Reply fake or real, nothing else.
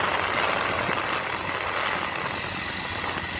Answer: real